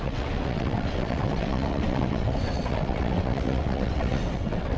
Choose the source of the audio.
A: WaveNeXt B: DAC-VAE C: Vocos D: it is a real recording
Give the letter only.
A